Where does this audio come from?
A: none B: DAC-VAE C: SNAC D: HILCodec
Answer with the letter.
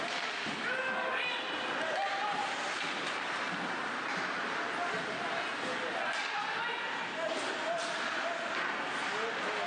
A